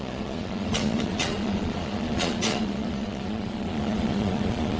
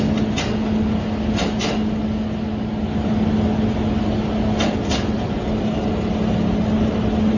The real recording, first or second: second